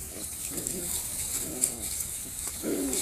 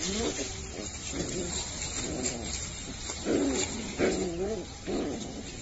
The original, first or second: second